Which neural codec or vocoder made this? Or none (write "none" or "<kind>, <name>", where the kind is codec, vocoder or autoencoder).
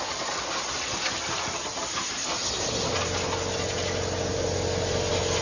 none